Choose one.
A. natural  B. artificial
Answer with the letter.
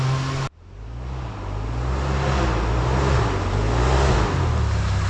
A